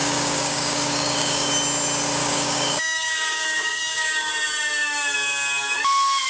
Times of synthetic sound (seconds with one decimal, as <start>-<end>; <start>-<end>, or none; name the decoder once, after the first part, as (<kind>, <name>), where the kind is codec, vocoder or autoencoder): 0.0-1.5 (codec, DAC); 2.2-4.3